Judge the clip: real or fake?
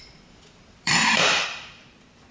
fake